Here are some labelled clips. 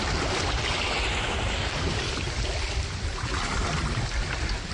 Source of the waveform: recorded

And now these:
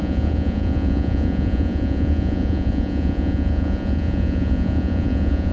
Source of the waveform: remade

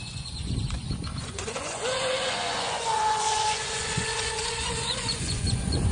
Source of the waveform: remade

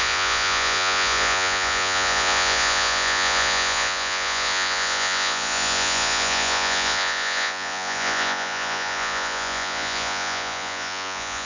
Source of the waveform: remade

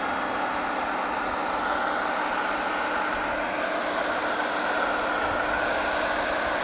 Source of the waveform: recorded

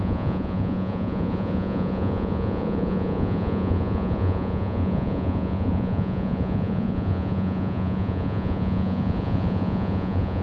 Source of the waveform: remade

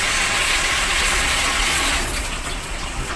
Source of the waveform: remade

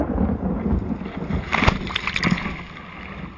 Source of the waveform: recorded